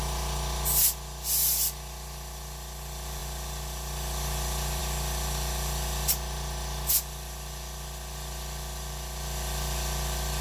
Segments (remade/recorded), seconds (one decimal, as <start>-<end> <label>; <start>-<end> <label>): 0.0-10.4 recorded